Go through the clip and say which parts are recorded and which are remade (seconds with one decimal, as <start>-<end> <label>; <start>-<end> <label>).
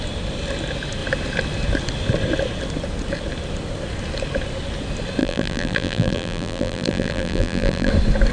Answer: 0.0-5.2 recorded; 5.2-7.9 remade; 7.9-8.3 recorded